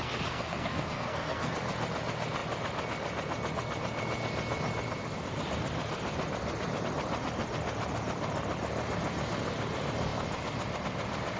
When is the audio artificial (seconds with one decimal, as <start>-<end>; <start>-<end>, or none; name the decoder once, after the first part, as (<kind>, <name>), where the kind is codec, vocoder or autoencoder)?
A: 0.0-1.5 (codec, SNAC)